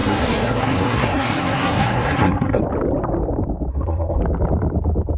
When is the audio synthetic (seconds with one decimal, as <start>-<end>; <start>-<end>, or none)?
0.0-2.6; 3.7-4.2